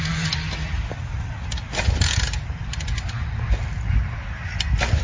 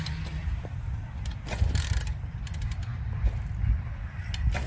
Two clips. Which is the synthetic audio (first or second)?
second